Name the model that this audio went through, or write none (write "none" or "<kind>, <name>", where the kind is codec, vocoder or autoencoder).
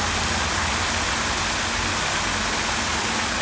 none